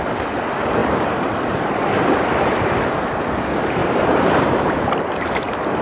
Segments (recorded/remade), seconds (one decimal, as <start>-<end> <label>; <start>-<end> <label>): 0.0-0.8 recorded; 0.8-2.2 remade; 2.2-3.8 recorded; 3.8-5.8 remade

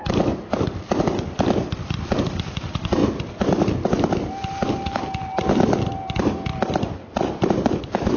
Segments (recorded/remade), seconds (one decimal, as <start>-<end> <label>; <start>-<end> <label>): 0.0-1.0 recorded; 1.0-3.0 remade; 3.0-5.9 recorded; 5.9-8.2 remade

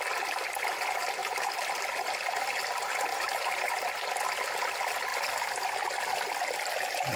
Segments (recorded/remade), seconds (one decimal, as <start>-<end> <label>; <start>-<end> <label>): 0.0-1.2 recorded; 1.2-1.7 remade; 1.7-3.1 recorded; 3.1-3.8 remade; 3.8-7.2 recorded

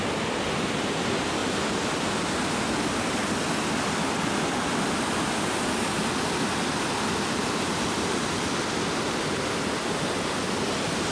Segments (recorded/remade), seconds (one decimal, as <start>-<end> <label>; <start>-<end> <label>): 0.0-1.4 recorded; 1.4-2.2 remade; 2.2-11.1 recorded

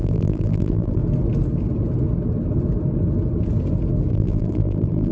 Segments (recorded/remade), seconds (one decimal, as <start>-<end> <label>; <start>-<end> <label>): 0.0-1.0 remade; 1.0-4.1 recorded; 4.1-5.1 remade

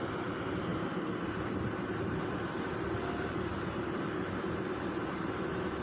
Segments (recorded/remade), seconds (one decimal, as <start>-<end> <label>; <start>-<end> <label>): 0.0-5.8 recorded